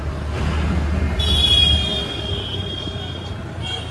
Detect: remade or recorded recorded